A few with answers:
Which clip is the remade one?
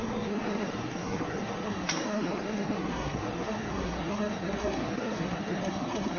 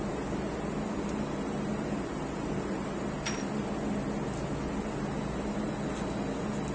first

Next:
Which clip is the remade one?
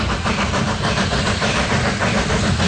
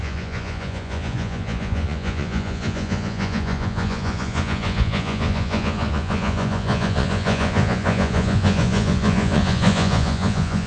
second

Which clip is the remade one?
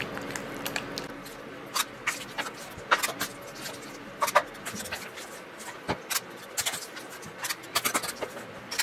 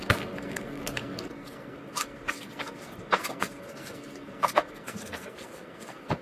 second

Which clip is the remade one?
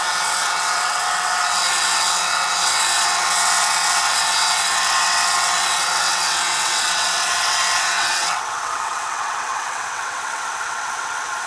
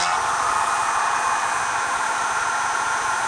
first